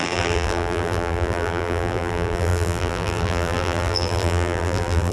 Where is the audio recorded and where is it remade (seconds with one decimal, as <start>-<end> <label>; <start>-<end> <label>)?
0.0-5.1 remade